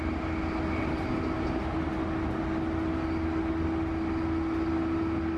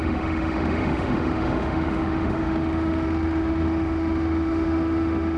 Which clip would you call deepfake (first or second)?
second